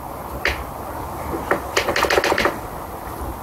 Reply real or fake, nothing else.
real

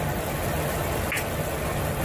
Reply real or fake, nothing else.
real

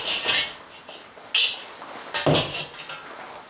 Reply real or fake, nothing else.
real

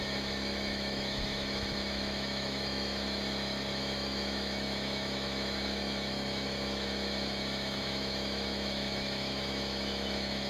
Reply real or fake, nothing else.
fake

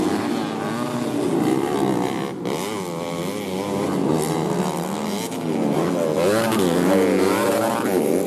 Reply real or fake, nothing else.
real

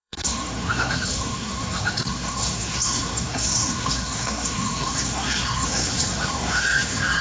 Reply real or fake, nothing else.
fake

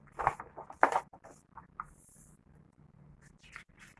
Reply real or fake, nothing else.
real